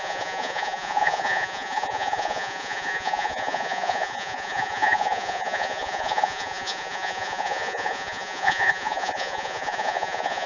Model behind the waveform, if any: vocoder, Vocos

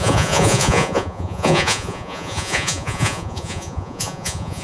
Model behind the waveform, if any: vocoder, Vocos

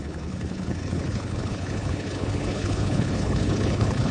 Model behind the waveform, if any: codec, HILCodec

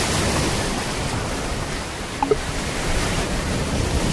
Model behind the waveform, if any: none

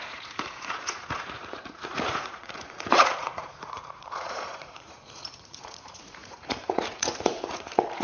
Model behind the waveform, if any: vocoder, Vocos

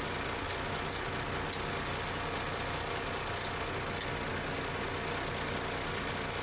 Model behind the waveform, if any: none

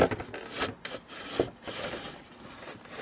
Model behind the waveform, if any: none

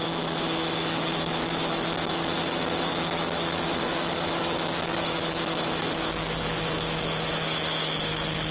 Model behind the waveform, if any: autoencoder, DAC-VAE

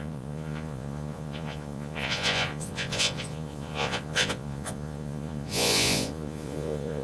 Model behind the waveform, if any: vocoder, Vocos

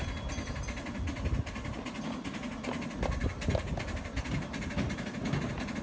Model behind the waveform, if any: none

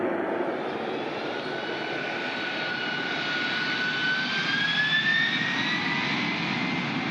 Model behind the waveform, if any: none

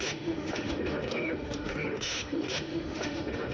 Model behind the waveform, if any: autoencoder, DAC-VAE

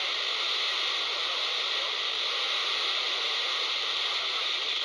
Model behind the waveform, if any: none